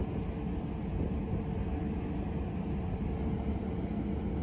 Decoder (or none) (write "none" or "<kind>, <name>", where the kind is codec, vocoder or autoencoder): none